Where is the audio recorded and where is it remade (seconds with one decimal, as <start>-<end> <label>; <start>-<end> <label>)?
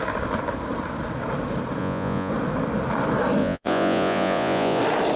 0.0-1.8 recorded; 1.8-2.3 remade; 2.3-3.4 recorded; 3.4-4.8 remade; 4.8-5.2 recorded